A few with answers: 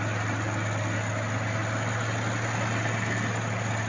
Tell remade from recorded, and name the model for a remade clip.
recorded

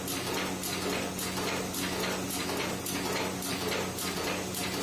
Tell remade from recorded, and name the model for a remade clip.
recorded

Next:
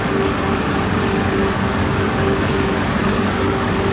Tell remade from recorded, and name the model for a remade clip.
remade, codec, DAC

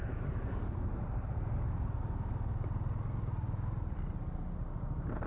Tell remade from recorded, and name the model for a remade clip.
recorded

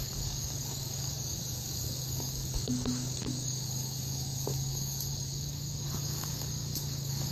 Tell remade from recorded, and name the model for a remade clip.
remade, codec, DAC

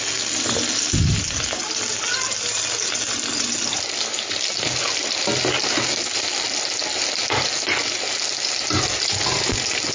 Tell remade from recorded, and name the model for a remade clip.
recorded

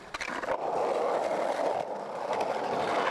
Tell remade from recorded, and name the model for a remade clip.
recorded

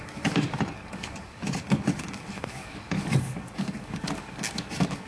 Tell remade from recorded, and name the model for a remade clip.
remade, codec, DAC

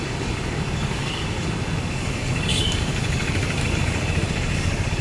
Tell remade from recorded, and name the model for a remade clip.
remade, codec, DAC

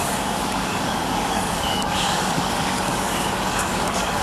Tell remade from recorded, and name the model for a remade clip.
remade, codec, DAC